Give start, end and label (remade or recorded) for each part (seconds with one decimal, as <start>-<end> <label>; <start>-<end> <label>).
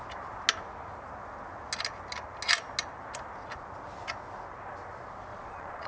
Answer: 0.0-5.3 recorded; 5.3-5.9 remade